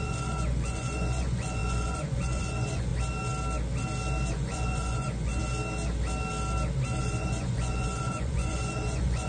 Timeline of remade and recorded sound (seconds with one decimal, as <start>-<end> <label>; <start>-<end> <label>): 0.0-2.9 remade; 2.9-4.3 recorded; 4.3-5.4 remade; 5.4-7.0 recorded; 7.0-9.3 remade